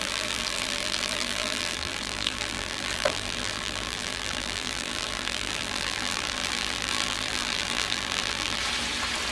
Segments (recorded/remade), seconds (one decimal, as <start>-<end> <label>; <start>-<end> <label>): 0.0-8.6 remade; 8.6-9.3 recorded